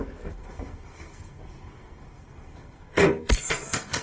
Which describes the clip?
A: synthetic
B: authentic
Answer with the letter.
A